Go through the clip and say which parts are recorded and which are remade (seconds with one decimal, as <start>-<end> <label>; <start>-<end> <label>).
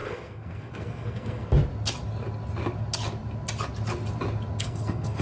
0.0-1.5 remade; 1.5-4.6 recorded; 4.6-5.2 remade